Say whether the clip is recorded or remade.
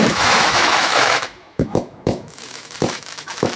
remade